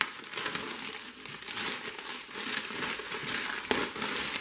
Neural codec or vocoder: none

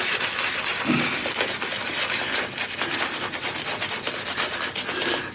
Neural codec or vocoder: none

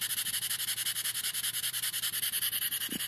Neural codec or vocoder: none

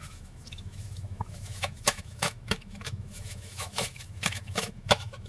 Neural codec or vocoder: autoencoder, DAC-VAE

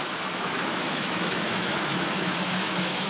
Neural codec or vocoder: autoencoder, DAC-VAE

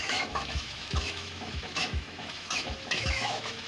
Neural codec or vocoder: autoencoder, DAC-VAE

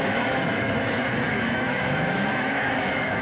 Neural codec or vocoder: autoencoder, DAC-VAE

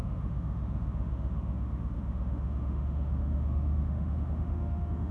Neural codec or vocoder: autoencoder, DAC-VAE